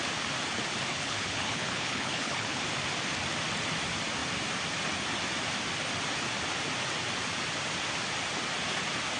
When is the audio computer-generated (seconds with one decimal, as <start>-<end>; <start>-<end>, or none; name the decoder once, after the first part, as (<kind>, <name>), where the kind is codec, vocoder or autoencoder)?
0.9-2.6 (codec, HILCodec)

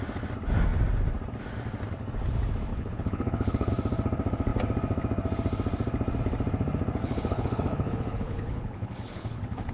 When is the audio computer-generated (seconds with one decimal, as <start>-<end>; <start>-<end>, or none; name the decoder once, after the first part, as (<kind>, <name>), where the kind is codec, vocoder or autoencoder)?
2.7-3.7 (codec, HILCodec); 7.0-9.7

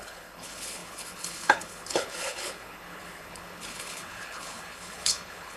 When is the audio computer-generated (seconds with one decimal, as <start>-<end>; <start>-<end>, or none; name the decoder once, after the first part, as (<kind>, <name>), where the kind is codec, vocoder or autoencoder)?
0.0-5.6 (codec, HILCodec)

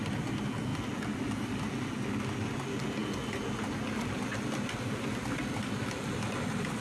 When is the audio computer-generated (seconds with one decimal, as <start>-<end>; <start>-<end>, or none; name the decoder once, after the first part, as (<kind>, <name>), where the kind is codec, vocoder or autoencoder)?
none

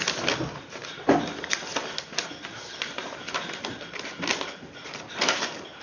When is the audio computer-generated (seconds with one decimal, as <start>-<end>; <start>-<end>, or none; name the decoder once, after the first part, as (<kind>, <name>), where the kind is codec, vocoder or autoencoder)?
none